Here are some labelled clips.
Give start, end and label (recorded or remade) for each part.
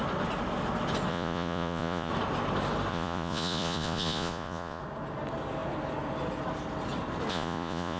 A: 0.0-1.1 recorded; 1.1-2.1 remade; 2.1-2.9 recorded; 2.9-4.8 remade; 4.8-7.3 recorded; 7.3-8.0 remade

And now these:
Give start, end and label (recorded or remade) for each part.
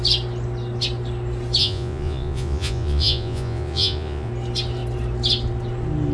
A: 0.0-1.6 recorded; 1.6-4.3 remade; 4.3-6.1 recorded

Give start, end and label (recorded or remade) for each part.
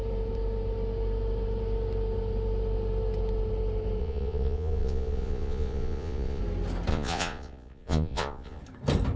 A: 0.0-4.0 recorded; 4.0-6.4 remade; 6.4-6.9 recorded; 6.9-8.6 remade; 8.6-9.2 recorded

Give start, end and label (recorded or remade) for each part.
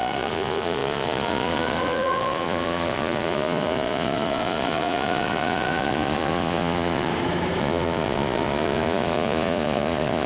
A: 0.0-7.1 remade; 7.1-7.6 recorded; 7.6-10.3 remade